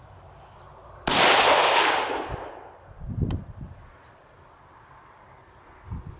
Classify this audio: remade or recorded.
recorded